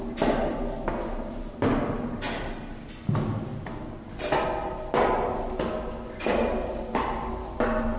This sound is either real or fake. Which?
real